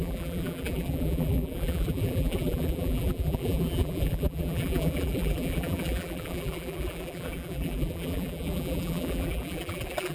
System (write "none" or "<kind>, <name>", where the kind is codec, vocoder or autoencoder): vocoder, BigVGAN v2